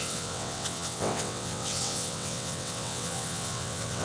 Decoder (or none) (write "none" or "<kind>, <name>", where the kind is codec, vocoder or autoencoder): vocoder, WaveNeXt